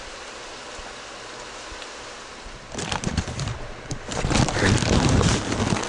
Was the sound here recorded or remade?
recorded